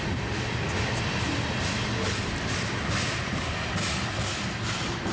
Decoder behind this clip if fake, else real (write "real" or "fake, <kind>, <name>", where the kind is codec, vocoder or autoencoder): real